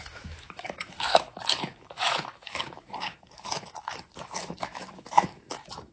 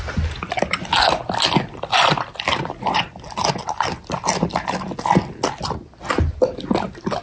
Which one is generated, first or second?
first